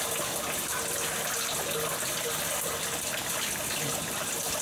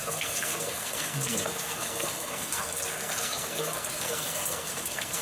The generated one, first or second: second